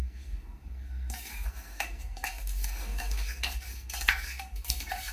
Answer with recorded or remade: remade